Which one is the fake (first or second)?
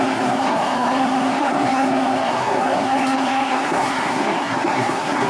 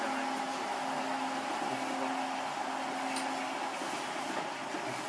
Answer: first